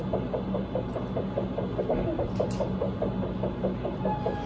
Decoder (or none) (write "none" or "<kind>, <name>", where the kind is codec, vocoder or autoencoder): none